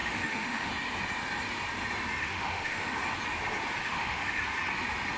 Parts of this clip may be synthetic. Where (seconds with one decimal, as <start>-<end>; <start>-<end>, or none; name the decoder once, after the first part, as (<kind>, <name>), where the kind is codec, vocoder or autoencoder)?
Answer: 0.0-0.7 (autoencoder, DAC-VAE); 2.2-2.9; 3.8-4.4